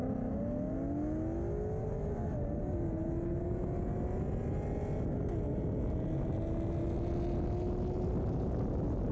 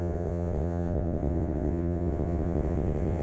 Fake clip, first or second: second